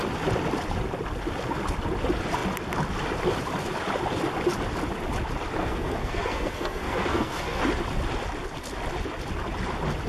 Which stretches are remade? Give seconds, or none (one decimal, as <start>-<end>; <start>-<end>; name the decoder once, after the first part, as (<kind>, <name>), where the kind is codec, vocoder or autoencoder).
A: 5.6-7.6 (codec, SNAC)